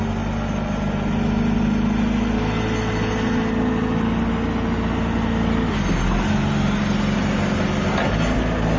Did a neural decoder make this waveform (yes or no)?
no